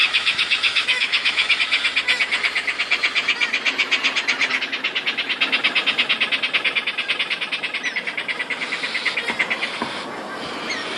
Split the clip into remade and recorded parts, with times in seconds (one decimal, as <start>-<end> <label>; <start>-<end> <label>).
0.0-1.6 remade; 1.6-11.0 recorded